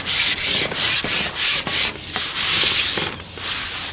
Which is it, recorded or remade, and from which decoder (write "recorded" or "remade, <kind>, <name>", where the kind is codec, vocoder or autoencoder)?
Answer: recorded